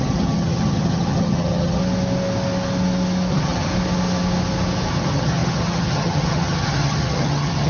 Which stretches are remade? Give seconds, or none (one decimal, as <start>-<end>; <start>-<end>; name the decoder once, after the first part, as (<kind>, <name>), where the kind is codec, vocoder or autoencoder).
0.0-1.8 (vocoder, HiFi-GAN); 3.3-3.7; 4.9-7.7